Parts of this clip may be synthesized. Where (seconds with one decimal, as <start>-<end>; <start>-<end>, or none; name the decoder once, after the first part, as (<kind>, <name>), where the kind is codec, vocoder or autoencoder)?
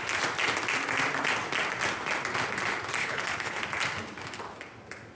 3.0-3.6 (codec, HILCodec)